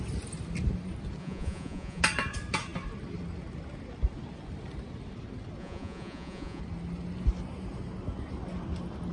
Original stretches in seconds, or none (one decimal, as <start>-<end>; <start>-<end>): 0.0-1.2; 2.0-5.6; 6.6-9.1